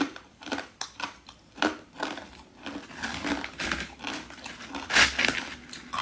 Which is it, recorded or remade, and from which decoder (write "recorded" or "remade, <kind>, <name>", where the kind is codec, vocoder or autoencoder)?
recorded